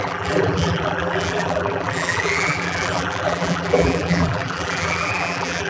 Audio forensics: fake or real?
fake